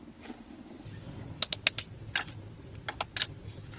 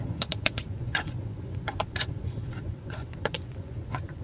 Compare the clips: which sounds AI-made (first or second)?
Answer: second